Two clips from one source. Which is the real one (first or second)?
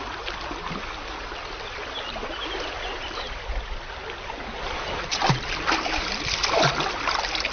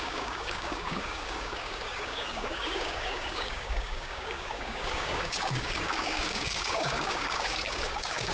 first